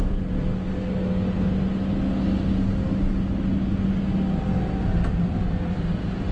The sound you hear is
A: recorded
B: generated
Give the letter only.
A